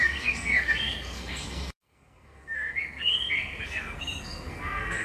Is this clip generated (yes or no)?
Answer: yes